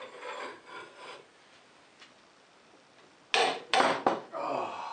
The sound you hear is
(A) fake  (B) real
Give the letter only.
B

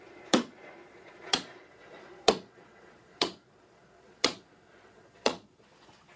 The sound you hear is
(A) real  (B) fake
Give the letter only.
B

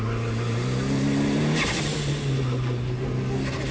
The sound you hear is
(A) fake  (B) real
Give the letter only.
B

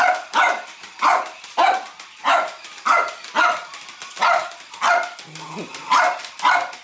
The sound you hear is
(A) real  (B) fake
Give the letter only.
A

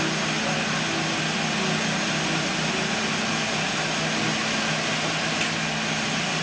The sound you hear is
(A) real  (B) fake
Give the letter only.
A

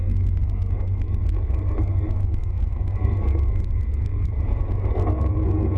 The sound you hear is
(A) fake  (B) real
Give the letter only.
A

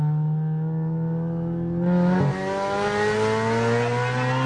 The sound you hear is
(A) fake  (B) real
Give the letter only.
B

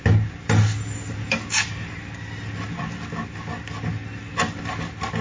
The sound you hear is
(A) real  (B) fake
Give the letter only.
A